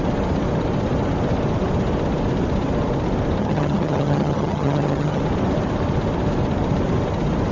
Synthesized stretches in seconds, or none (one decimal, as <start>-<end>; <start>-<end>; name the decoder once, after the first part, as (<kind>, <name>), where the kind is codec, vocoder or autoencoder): 3.4-5.2 (vocoder, HiFi-GAN)